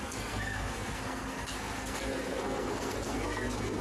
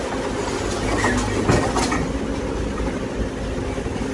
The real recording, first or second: second